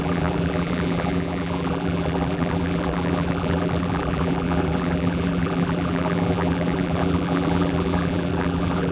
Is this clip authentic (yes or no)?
no